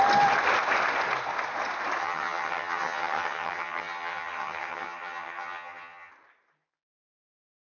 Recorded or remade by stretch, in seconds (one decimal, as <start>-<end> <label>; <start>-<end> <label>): 0.0-2.0 recorded; 2.0-6.1 remade; 6.1-7.8 recorded